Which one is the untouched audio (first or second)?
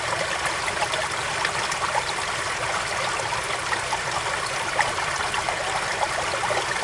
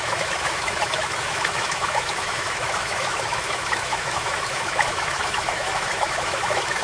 first